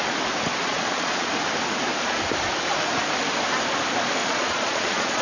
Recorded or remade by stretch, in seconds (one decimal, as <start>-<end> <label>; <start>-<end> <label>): 0.0-0.6 recorded; 0.6-1.3 remade; 1.3-4.2 recorded; 4.2-5.2 remade

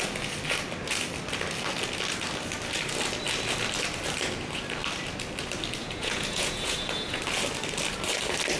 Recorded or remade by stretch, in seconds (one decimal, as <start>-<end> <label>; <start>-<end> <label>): 0.0-5.8 recorded; 5.8-7.2 remade; 7.2-8.6 recorded

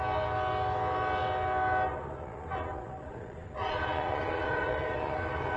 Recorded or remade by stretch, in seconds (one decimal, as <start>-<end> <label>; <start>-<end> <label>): 0.0-1.9 recorded; 1.9-5.6 remade

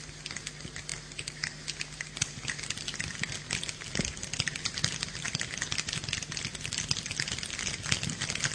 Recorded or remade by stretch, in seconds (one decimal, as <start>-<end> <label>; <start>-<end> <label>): 0.0-8.5 recorded